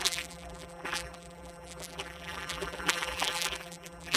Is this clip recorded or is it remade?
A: remade